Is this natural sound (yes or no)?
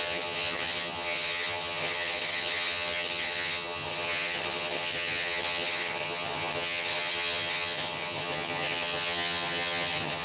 no